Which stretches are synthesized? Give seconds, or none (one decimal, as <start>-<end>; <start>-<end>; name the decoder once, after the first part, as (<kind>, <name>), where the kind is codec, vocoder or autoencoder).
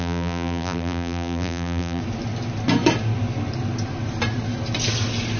0.0-2.0 (vocoder, BigVGAN v2)